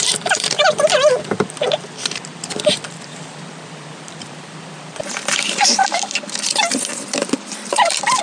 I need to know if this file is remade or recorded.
remade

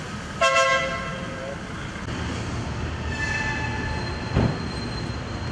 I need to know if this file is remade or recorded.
recorded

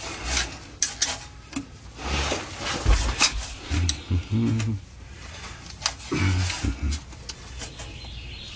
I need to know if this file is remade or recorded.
recorded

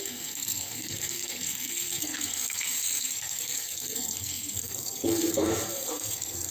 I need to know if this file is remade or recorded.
remade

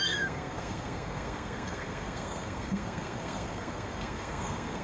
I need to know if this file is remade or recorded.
remade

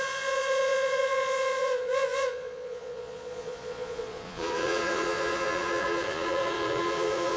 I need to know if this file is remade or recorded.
remade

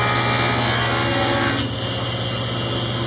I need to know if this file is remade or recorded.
recorded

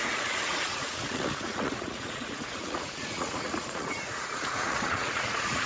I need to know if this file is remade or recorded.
remade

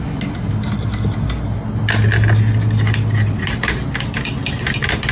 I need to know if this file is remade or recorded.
recorded